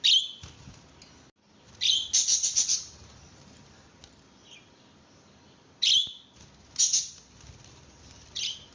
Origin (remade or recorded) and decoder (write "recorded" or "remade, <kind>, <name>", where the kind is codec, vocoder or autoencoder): recorded